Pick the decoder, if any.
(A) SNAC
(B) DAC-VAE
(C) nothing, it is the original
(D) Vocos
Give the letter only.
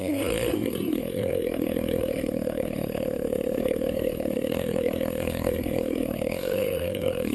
A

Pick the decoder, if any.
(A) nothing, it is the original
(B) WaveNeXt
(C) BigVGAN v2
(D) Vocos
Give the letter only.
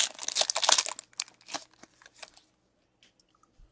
A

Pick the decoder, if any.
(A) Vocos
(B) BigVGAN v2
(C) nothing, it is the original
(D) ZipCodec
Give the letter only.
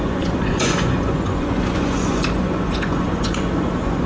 A